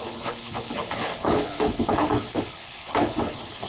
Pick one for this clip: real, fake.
fake